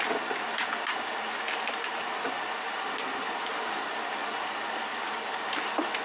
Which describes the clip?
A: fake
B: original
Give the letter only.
A